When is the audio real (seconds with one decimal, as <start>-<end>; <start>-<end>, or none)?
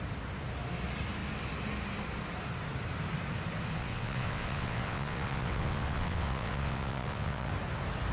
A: 0.0-3.8; 7.5-8.1